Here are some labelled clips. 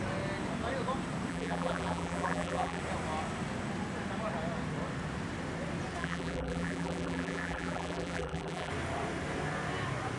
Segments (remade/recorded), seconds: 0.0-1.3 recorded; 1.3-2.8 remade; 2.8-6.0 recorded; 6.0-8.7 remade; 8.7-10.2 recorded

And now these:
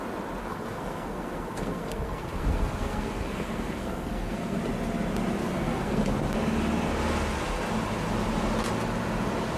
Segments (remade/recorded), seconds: 0.0-0.4 recorded; 0.4-4.6 remade; 4.6-5.4 recorded; 5.4-6.0 remade; 6.0-9.6 recorded

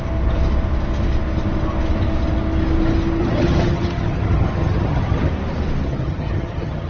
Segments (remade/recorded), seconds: 0.0-3.2 recorded; 3.2-5.3 remade; 5.3-5.9 recorded; 5.9-6.9 remade